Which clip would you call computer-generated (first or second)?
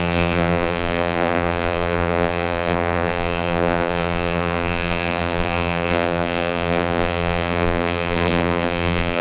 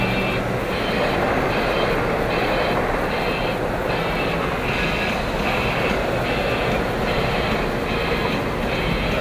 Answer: first